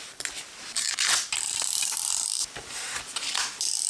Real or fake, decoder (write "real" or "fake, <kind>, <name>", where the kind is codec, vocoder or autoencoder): real